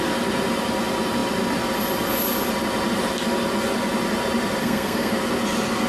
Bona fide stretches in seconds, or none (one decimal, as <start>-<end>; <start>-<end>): 0.0-4.6; 5.1-5.9